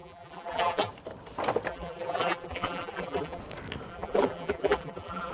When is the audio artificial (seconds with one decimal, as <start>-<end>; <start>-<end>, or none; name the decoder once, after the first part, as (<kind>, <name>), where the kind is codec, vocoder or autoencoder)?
0.0-0.9 (vocoder, BigVGAN v2); 1.7-3.4; 3.9-5.3